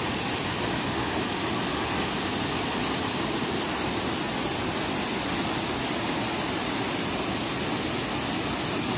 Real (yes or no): yes